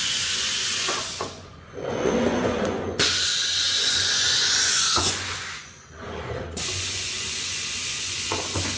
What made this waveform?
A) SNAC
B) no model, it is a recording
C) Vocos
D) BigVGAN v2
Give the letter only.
C